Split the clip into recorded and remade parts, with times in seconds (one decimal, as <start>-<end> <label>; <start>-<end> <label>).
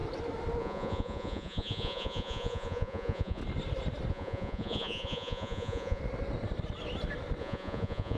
0.0-0.6 recorded; 0.6-3.4 remade; 3.4-4.1 recorded; 4.1-6.0 remade; 6.0-7.4 recorded; 7.4-8.2 remade